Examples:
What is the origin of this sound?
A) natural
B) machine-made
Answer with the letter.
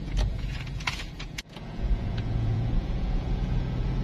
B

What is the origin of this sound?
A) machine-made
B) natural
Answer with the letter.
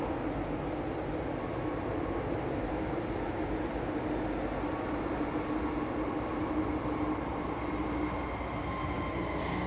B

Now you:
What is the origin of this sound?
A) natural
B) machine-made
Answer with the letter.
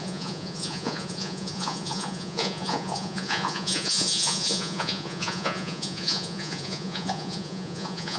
B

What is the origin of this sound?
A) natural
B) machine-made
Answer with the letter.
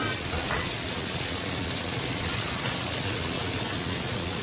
B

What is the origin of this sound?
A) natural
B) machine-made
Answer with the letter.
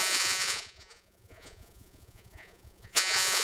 B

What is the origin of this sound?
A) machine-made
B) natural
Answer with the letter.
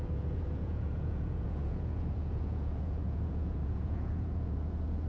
A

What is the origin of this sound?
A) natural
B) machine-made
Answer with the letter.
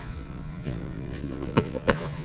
B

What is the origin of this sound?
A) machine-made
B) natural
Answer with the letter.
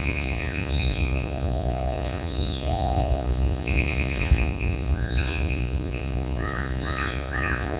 A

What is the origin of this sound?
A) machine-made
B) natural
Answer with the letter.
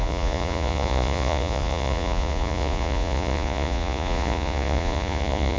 A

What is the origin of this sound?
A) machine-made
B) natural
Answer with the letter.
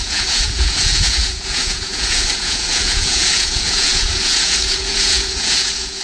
A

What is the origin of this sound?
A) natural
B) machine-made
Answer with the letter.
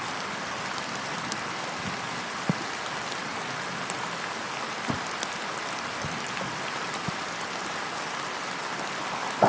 A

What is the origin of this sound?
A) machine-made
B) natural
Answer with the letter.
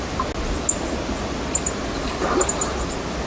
B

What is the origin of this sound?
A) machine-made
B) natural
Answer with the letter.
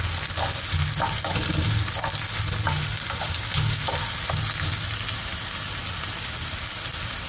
B